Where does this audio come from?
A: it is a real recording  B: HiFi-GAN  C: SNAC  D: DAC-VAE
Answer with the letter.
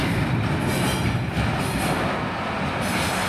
A